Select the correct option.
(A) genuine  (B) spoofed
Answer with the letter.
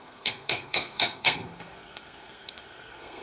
B